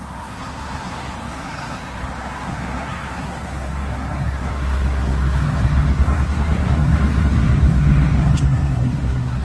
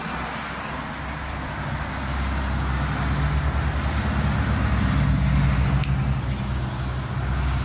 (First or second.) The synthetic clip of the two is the first